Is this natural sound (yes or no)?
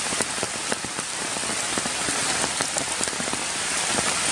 yes